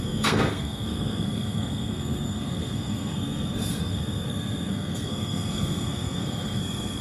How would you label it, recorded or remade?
remade